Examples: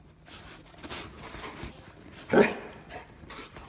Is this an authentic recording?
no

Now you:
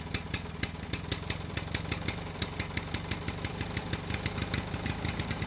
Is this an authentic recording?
yes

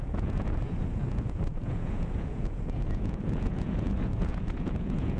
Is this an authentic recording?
no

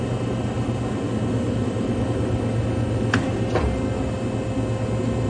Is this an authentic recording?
yes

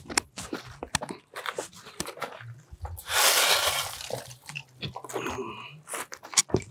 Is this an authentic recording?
yes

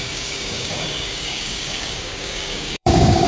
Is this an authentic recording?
no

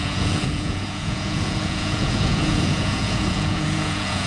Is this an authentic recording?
no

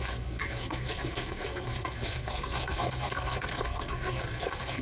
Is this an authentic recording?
no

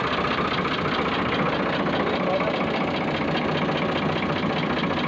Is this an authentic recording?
yes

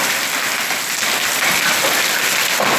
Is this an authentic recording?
yes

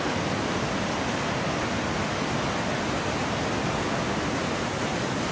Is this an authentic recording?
yes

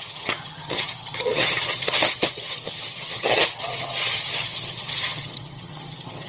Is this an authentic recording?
no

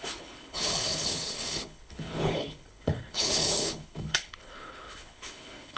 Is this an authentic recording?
no